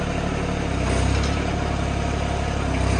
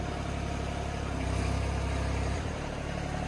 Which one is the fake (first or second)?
second